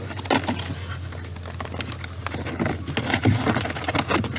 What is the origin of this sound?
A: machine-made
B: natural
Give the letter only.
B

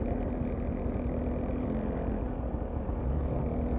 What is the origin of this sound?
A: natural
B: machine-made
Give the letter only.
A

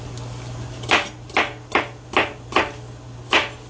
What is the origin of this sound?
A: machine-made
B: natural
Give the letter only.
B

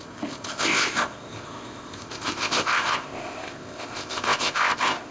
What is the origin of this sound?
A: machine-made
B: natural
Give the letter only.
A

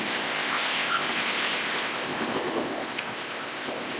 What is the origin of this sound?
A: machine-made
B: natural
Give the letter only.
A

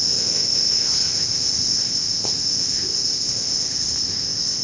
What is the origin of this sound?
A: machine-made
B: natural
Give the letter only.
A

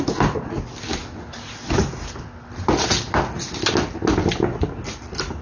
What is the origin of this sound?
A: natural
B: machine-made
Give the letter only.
A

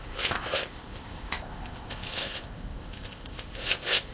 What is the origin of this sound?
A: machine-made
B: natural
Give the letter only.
A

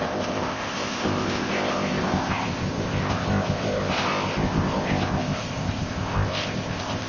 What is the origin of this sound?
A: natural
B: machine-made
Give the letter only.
B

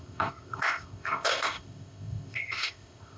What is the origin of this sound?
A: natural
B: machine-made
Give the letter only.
B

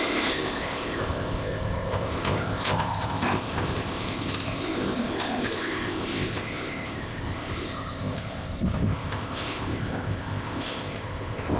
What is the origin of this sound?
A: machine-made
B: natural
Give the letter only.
A